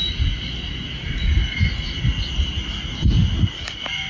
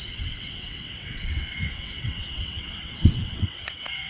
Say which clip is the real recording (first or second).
first